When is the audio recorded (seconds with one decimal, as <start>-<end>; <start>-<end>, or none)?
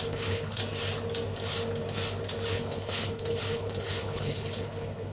0.6-2.5